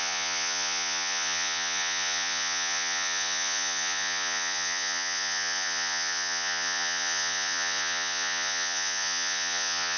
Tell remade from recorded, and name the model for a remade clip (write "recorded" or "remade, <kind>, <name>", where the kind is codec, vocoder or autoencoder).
remade, vocoder, Vocos